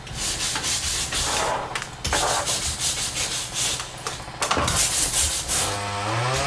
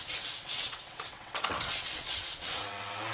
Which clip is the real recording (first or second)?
first